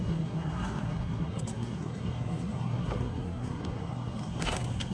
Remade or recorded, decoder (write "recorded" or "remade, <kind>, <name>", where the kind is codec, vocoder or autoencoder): remade, codec, SNAC